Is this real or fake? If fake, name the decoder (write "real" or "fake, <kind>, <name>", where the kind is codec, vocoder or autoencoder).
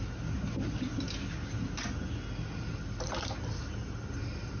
real